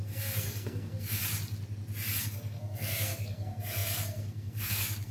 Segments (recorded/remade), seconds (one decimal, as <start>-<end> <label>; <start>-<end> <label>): 0.0-1.2 remade; 1.2-2.2 recorded; 2.2-5.1 remade